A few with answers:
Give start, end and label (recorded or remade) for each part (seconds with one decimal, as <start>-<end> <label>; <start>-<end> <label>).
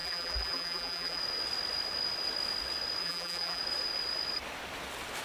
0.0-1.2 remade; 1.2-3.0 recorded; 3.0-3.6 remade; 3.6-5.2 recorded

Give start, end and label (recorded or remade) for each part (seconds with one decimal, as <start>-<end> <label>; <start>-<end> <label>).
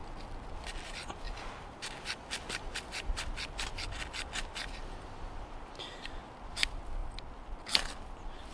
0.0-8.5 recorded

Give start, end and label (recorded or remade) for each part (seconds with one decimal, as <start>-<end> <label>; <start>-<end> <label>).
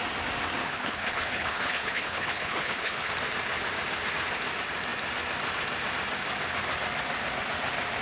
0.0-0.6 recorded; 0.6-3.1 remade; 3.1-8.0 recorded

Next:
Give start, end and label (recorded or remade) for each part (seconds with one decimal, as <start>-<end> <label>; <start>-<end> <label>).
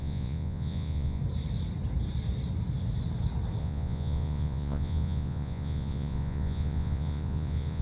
0.0-1.2 remade; 1.2-3.6 recorded; 3.6-7.8 remade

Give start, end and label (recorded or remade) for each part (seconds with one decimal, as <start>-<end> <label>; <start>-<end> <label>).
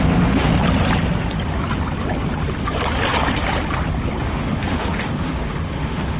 0.0-0.5 remade; 0.5-4.2 recorded; 4.2-6.2 remade